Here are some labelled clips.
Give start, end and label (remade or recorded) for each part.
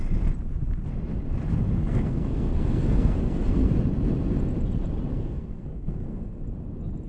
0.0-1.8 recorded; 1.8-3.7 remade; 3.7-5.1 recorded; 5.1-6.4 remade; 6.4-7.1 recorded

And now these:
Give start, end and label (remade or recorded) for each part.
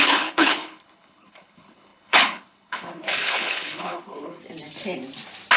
0.0-4.4 remade; 4.4-5.6 recorded